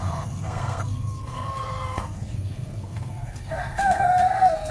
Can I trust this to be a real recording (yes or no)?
no